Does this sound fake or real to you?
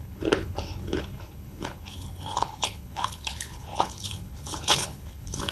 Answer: fake